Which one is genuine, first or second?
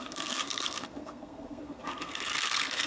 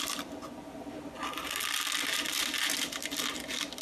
second